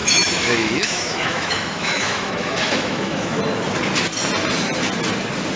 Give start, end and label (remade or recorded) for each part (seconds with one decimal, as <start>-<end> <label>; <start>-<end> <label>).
0.0-3.4 remade; 3.4-5.6 recorded